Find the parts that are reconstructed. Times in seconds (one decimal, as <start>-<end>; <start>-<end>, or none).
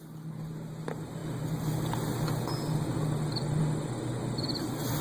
none